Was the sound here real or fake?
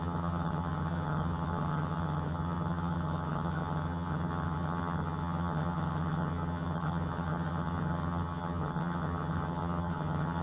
fake